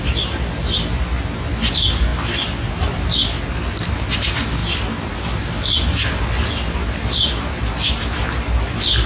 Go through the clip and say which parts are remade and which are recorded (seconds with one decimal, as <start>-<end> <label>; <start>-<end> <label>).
0.0-9.1 recorded